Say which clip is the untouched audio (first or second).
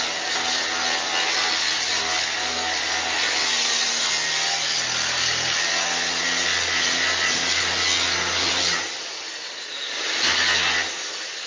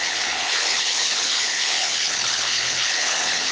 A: first